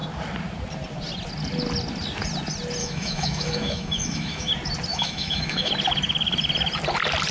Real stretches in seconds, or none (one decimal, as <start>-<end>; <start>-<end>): 0.0-2.8; 4.5-4.9; 5.7-7.3